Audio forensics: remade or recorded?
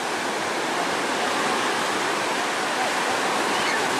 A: recorded